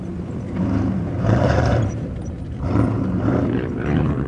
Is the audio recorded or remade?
remade